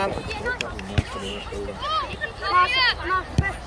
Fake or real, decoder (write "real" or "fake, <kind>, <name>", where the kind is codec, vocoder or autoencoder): real